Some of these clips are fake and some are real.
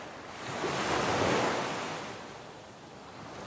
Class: real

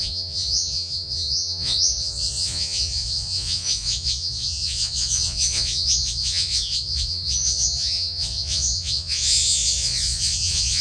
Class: fake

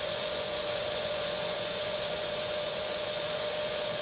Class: fake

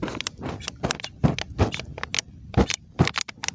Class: real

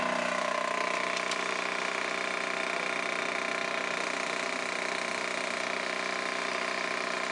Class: real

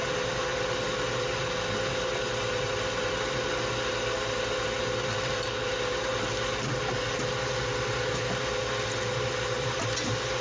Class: real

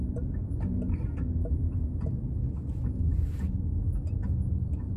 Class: real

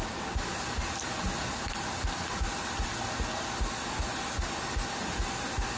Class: real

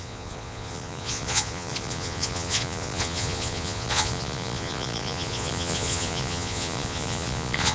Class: fake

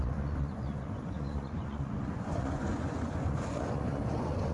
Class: fake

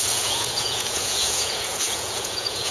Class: fake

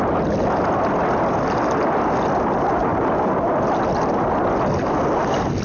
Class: real